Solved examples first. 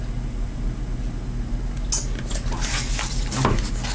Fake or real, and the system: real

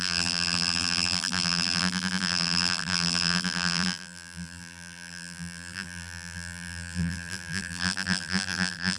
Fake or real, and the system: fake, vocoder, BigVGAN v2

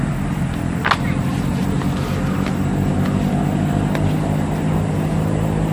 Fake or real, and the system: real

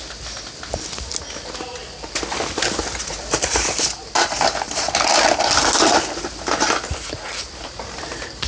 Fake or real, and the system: real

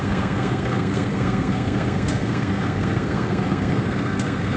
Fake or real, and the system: fake, codec, SNAC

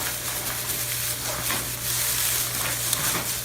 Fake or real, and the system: real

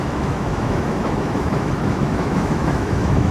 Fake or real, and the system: fake, autoencoder, DAC-VAE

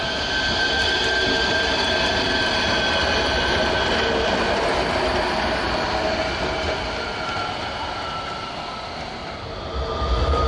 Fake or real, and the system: real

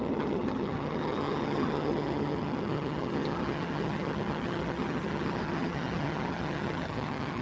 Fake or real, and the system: fake, vocoder, HiFi-GAN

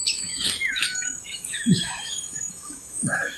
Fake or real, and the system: fake, autoencoder, DAC-VAE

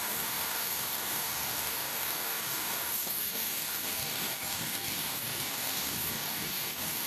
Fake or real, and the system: fake, codec, DAC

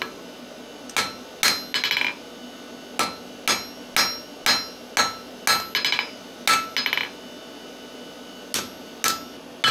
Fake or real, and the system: real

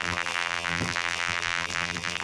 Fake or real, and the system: fake, vocoder, BigVGAN v2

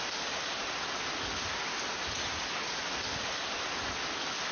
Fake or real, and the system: real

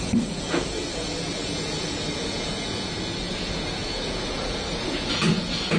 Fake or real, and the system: fake, vocoder, Vocos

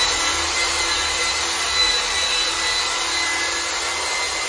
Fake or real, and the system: real